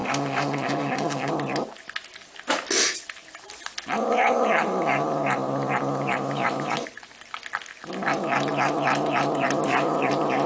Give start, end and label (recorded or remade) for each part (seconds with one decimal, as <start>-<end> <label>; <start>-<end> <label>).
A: 0.0-1.3 remade; 1.3-10.5 recorded